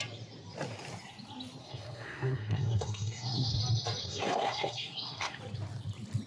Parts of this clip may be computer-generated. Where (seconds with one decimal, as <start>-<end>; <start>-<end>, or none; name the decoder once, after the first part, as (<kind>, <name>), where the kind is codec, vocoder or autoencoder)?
1.6-3.6 (codec, SNAC); 4.0-5.4

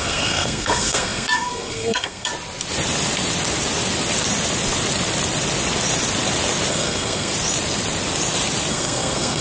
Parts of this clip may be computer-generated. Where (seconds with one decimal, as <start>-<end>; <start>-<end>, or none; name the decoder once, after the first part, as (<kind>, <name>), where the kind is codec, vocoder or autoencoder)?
0.0-2.3 (codec, SNAC); 6.7-7.3; 8.7-9.4